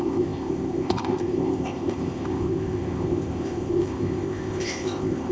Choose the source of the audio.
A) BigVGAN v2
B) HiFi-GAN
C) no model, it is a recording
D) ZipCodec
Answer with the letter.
D